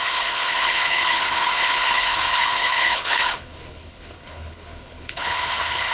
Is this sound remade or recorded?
remade